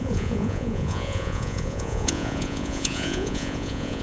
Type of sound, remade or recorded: remade